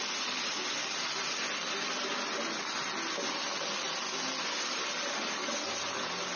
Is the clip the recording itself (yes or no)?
yes